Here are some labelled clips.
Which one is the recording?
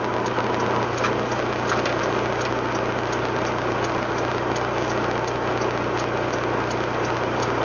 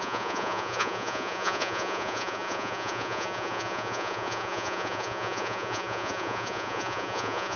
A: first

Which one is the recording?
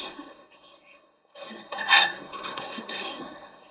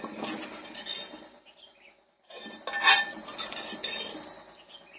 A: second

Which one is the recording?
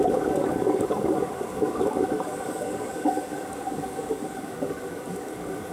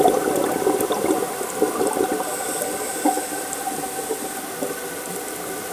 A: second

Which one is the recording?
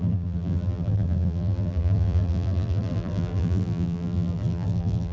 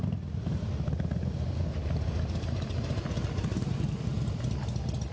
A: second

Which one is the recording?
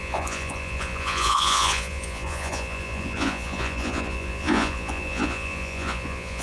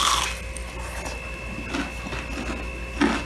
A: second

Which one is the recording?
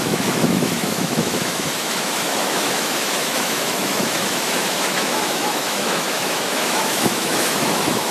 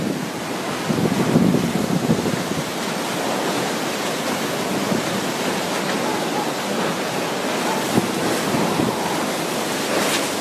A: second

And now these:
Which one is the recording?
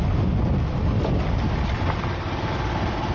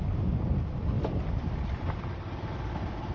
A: first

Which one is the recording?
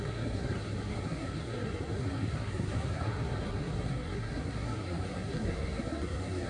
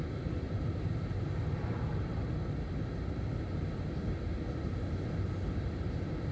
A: second